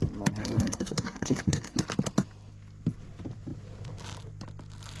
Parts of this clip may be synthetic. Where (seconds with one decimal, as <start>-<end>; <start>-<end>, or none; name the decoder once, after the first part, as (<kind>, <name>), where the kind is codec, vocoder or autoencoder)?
0.4-1.8 (codec, SNAC)